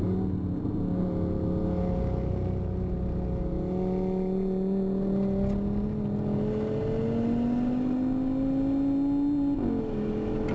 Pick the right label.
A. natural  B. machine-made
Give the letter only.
A